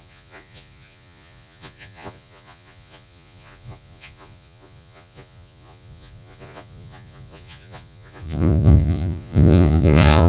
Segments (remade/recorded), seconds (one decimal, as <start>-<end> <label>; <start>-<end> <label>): 0.0-10.3 remade